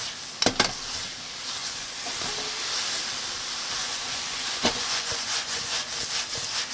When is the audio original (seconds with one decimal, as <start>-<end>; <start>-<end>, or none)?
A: 0.0-1.6; 2.1-3.8; 5.9-6.7